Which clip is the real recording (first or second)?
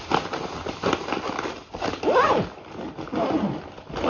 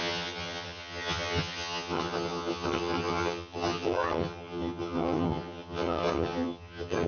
first